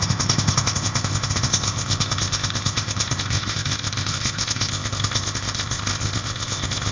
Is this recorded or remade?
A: remade